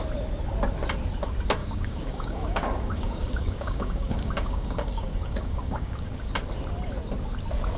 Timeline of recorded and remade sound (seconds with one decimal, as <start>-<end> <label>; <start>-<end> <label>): 0.0-1.6 recorded; 1.6-6.3 remade; 6.3-7.8 recorded